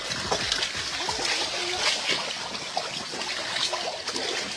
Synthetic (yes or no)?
no